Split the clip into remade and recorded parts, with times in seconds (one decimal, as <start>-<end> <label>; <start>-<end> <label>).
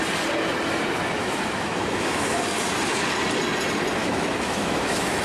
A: 0.0-1.2 recorded; 1.2-2.3 remade; 2.3-4.0 recorded; 4.0-5.2 remade